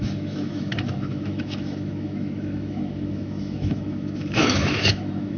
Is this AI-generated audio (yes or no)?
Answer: yes